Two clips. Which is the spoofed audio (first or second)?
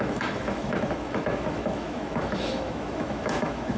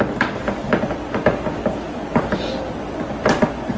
first